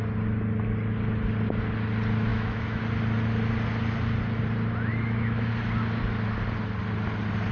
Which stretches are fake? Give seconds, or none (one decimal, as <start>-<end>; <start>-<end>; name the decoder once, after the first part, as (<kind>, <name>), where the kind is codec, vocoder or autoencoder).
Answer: 2.3-2.8 (autoencoder, DAC-VAE); 4.9-5.5